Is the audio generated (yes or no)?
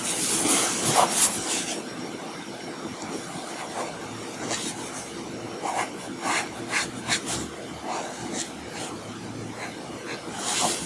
no